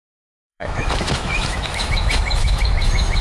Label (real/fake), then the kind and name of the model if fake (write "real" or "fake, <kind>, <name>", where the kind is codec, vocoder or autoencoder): fake, autoencoder, DAC-VAE